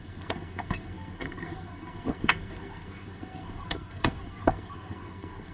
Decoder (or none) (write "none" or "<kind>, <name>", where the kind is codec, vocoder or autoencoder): codec, SNAC